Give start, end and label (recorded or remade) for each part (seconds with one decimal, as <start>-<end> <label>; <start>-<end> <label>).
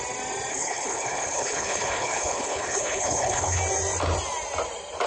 0.0-0.5 recorded; 0.5-3.6 remade; 3.6-5.1 recorded